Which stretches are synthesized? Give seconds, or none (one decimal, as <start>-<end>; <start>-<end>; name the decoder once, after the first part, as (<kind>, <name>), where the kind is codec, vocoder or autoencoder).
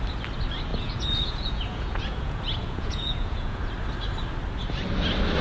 0.7-3.6 (vocoder, Vocos)